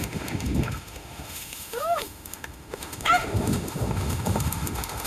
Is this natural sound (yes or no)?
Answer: no